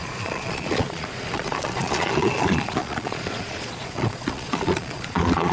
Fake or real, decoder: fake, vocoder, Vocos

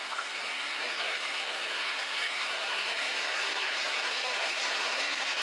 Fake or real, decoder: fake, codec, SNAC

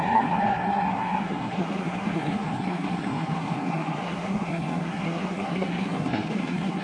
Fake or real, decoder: fake, codec, SNAC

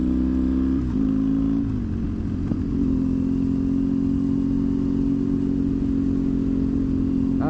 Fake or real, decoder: real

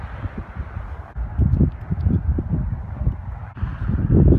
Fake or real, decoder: real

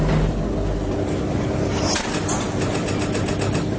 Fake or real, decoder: real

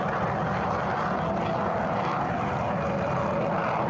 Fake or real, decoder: real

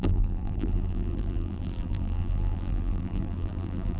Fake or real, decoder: fake, vocoder, BigVGAN v2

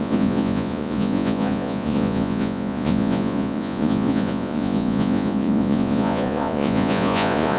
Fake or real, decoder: fake, vocoder, Vocos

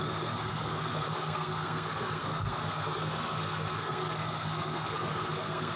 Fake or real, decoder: fake, codec, SNAC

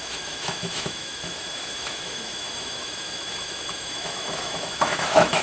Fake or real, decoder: fake, autoencoder, DAC-VAE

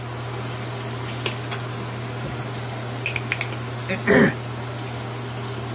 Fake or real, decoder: real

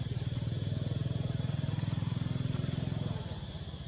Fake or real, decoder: real